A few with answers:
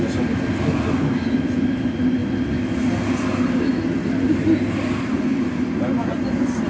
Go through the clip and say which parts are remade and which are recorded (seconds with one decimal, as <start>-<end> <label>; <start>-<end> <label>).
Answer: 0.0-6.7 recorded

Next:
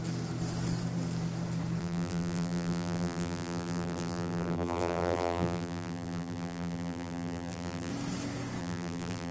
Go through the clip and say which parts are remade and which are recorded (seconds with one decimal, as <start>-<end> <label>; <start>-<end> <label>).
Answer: 0.0-1.8 recorded; 1.8-7.9 remade; 7.9-8.6 recorded; 8.6-9.3 remade

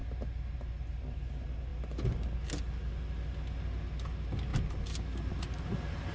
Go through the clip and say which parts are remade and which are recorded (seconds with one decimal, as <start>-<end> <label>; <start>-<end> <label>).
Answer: 0.0-6.1 recorded

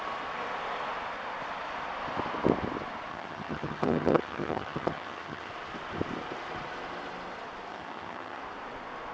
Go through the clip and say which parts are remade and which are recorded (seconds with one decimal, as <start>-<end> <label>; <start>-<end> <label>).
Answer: 0.0-3.1 recorded; 3.1-5.5 remade; 5.5-7.7 recorded; 7.7-8.4 remade; 8.4-9.1 recorded

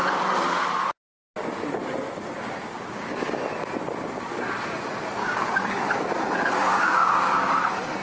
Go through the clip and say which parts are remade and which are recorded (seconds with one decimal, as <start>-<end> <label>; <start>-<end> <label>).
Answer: 0.0-2.7 recorded; 2.7-3.4 remade; 3.4-5.2 recorded; 5.2-5.7 remade; 5.7-6.7 recorded; 6.7-7.5 remade; 7.5-8.0 recorded

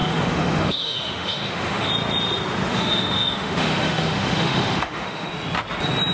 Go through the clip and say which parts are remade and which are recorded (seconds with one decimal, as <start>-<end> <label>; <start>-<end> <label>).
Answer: 0.0-1.9 remade; 1.9-2.7 recorded; 2.7-5.3 remade; 5.3-6.1 recorded

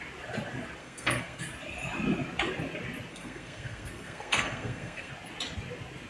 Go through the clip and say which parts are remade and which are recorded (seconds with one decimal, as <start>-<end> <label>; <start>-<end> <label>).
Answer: 0.0-0.8 recorded; 0.8-1.4 remade; 1.4-3.1 recorded; 3.1-5.1 remade; 5.1-6.1 recorded